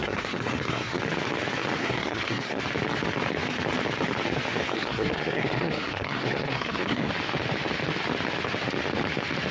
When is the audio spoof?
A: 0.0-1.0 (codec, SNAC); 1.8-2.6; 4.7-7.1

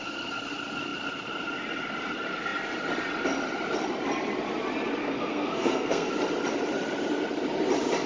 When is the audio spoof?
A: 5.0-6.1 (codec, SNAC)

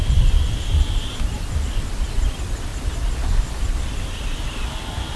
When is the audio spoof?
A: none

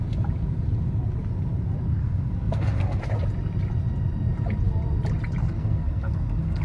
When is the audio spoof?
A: 2.0-3.0 (codec, SNAC); 5.4-6.6

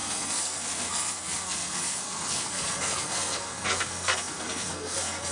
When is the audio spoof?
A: 0.0-5.3 (codec, SNAC)

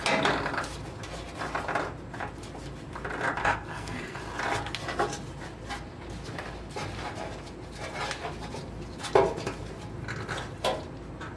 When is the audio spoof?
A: 3.4-4.2 (codec, SNAC)

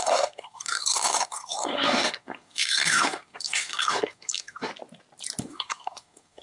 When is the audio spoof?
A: 0.0-4.7 (codec, SNAC); 5.4-6.4

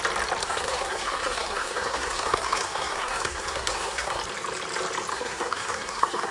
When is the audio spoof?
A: 0.4-4.2 (codec, SNAC); 5.1-6.3